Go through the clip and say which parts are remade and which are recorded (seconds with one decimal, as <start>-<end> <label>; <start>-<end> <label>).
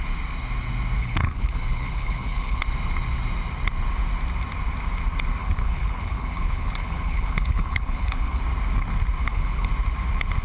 0.0-1.0 recorded; 1.0-2.6 remade; 2.6-5.4 recorded; 5.4-8.4 remade; 8.4-9.2 recorded; 9.2-9.7 remade; 9.7-10.4 recorded